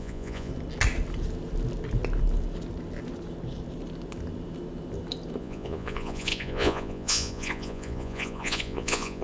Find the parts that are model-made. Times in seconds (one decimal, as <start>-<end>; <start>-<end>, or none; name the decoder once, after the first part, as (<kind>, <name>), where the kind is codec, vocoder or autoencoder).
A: 0.0-0.5 (vocoder, Vocos); 5.4-9.2